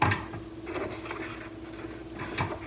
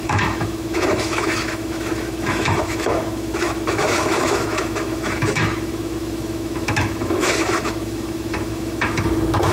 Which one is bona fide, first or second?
first